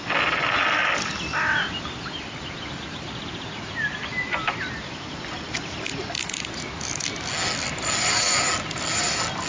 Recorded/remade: recorded